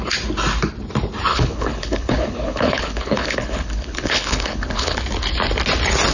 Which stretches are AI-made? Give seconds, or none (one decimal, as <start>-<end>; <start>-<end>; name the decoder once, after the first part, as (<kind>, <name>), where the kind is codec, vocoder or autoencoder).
1.3-5.0 (codec, HILCodec)